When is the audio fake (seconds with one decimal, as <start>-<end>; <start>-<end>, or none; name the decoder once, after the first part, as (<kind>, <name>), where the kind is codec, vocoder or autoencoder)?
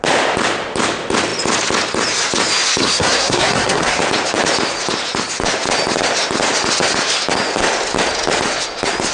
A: 2.8-4.0 (codec, SNAC)